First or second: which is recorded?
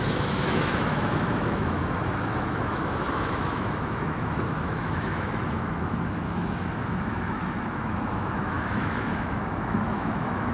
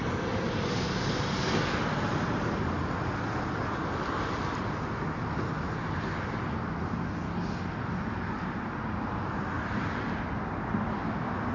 second